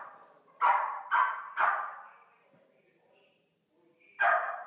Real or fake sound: real